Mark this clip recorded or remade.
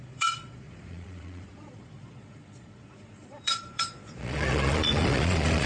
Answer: remade